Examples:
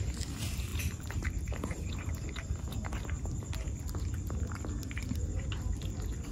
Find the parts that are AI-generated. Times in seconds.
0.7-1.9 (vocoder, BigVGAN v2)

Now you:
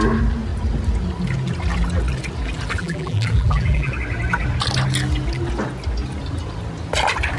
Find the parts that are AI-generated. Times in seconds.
2.8-3.9 (vocoder, BigVGAN v2)

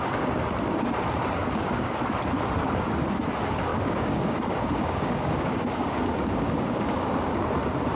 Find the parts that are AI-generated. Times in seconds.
1.4-2.0 (codec, DAC); 3.7-7.4

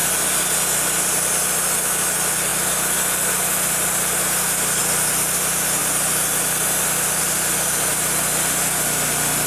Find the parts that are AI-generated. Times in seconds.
2.5-4.8 (vocoder, BigVGAN v2)

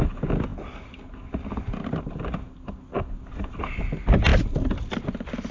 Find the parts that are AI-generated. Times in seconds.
none

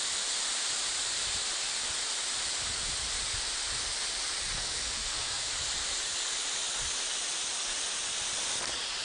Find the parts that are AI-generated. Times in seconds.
4.6-5.5 (codec, SNAC)

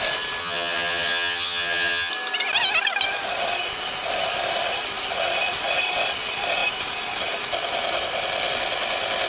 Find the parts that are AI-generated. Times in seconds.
0.4-2.1 (vocoder, HiFi-GAN)